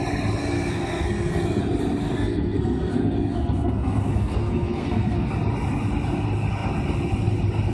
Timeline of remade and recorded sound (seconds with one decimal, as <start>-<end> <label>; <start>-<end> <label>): 0.0-0.4 recorded; 0.4-1.6 remade; 1.6-2.0 recorded; 2.0-5.3 remade; 5.3-7.7 recorded